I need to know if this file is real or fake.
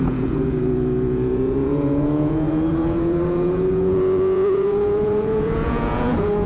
fake